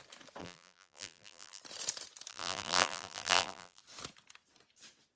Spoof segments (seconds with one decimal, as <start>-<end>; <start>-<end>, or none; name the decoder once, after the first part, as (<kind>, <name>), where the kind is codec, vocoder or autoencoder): 0.4-1.6 (vocoder, BigVGAN v2); 2.3-3.8